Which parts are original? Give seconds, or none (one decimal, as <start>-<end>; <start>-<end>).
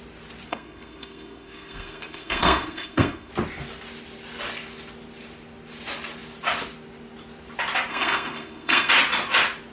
0.0-0.5; 3.3-7.9; 8.9-9.7